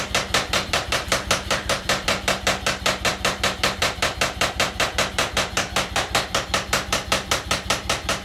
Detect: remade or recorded remade